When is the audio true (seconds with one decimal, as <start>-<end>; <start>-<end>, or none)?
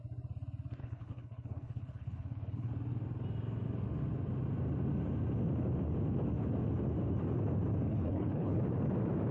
0.0-0.8; 2.7-7.9; 8.6-9.3